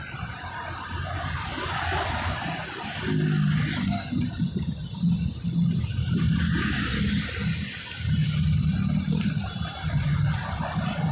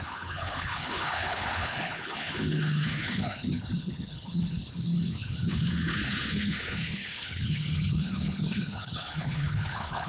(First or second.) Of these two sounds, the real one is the first